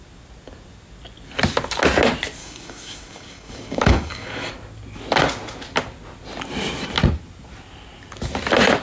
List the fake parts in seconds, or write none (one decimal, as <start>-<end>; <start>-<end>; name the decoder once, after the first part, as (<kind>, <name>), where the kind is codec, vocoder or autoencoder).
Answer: 2.4-4.5 (codec, DAC)